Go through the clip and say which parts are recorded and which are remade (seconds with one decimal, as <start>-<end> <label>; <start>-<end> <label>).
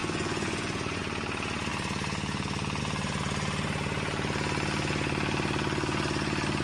0.0-1.0 remade; 1.0-6.6 recorded